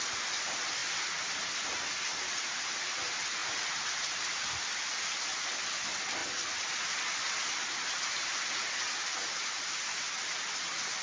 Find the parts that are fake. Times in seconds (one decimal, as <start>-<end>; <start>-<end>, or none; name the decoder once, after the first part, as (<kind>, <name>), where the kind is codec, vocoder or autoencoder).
none